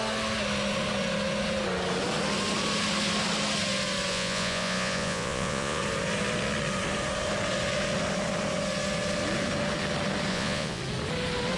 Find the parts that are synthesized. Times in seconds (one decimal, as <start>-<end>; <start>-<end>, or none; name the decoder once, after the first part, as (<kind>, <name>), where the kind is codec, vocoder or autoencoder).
4.1-5.8 (vocoder, Vocos); 10.3-10.8